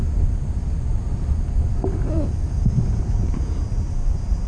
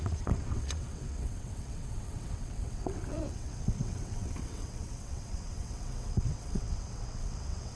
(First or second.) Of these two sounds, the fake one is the second